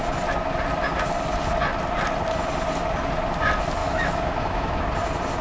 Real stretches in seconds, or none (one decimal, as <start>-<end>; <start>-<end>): 0.0-3.8; 4.8-5.4

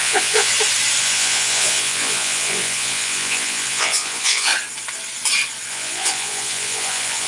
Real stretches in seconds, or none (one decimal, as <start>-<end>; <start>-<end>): 0.5-1.0; 4.5-5.7

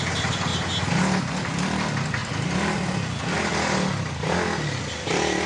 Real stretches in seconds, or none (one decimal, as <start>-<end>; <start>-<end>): 0.0-5.5

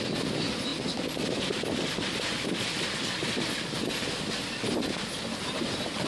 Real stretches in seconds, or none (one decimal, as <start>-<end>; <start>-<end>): 0.0-6.1

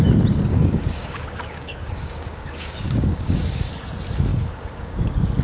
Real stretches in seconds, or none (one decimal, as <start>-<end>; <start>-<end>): 0.0-0.5; 3.7-4.3

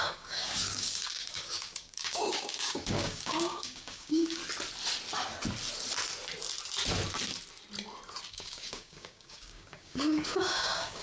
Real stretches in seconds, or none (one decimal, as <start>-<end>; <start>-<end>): 4.4-8.3